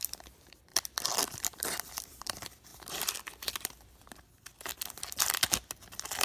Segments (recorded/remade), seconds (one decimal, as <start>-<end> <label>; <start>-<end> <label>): 0.0-2.7 remade; 2.7-3.5 recorded; 3.5-4.7 remade; 4.7-5.7 recorded; 5.7-6.2 remade